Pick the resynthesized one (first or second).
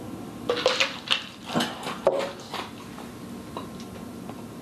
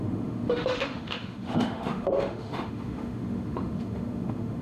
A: second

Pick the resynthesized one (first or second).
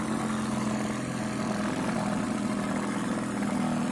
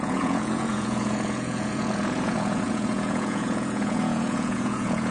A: second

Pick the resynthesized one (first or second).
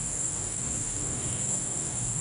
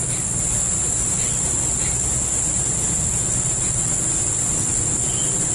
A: first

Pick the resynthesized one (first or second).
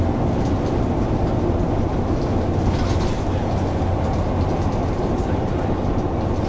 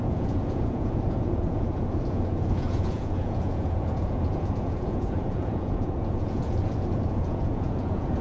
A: second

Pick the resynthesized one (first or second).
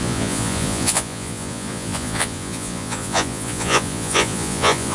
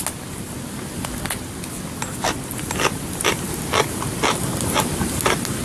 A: first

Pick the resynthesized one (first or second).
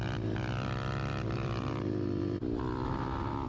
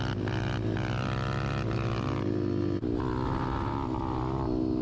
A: first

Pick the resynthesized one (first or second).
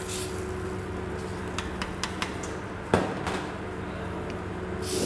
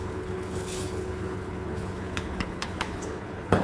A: second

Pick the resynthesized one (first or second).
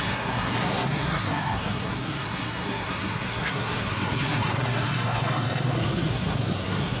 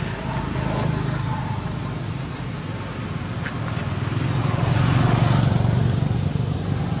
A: first